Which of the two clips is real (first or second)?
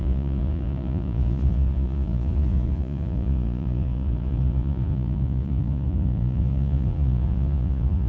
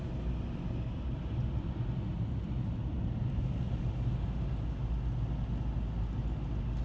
second